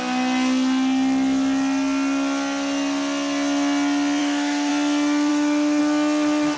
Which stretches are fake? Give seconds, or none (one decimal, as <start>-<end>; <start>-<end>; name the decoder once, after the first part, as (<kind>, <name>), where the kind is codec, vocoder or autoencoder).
4.2-4.7 (autoencoder, DAC-VAE); 5.3-5.8